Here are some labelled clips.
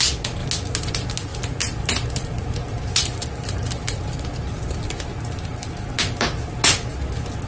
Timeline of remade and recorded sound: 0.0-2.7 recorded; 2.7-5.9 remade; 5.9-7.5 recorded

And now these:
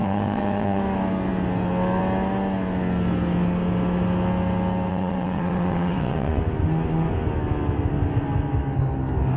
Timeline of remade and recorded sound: 0.0-0.8 remade; 0.8-4.9 recorded; 4.9-6.4 remade; 6.4-9.4 recorded